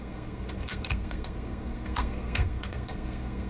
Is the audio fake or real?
fake